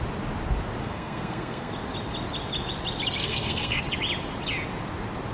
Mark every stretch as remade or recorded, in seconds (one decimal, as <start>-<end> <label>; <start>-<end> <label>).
0.0-0.8 recorded; 0.8-1.7 remade; 1.7-3.2 recorded; 3.2-3.8 remade; 3.8-5.3 recorded